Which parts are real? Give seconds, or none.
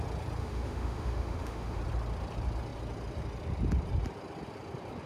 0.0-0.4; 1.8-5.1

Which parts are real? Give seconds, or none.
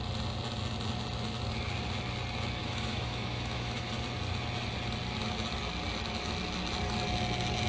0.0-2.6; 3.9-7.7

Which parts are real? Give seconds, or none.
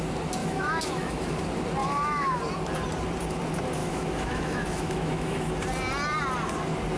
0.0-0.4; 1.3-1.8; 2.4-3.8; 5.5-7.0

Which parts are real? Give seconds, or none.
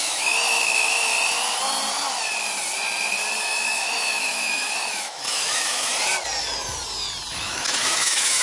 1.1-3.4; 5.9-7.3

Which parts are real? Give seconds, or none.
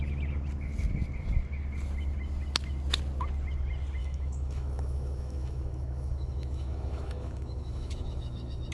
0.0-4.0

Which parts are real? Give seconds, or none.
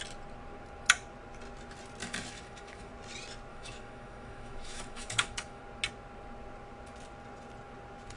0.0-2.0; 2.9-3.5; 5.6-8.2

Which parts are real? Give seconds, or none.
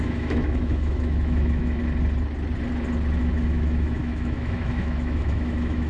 1.8-3.2